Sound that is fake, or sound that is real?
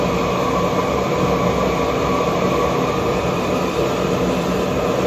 real